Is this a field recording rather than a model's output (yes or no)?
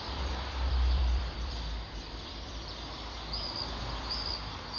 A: no